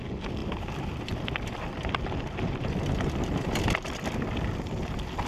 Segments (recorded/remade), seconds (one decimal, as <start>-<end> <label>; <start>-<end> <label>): 0.0-5.3 recorded